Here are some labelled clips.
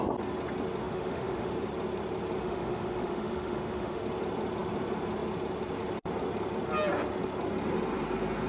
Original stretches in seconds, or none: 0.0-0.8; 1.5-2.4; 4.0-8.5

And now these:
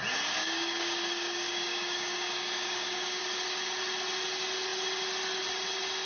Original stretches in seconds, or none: 0.0-0.4; 3.2-6.1

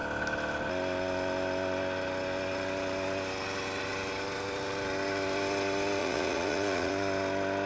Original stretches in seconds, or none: 0.0-6.0; 6.9-7.7